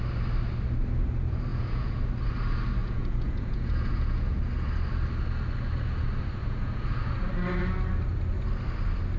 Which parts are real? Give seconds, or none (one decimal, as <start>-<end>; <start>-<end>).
0.0-1.5; 2.0-2.8; 4.4-6.4; 7.1-9.2